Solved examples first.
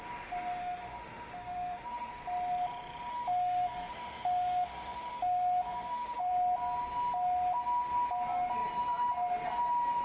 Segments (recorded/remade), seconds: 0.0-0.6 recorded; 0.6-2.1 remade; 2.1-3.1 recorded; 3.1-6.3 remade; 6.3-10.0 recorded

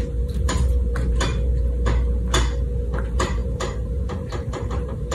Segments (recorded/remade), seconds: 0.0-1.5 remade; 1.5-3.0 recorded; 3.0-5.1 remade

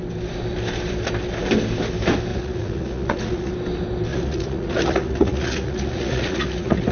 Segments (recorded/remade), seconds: 0.0-2.3 recorded; 2.3-3.5 remade; 3.5-4.1 recorded; 4.1-6.9 remade

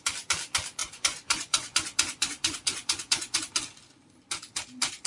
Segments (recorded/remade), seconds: 0.0-0.8 recorded; 0.8-3.4 remade; 3.4-5.1 recorded